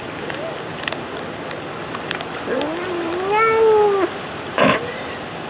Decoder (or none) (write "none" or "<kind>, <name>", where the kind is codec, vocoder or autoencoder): none